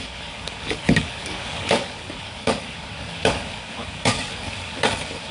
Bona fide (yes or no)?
no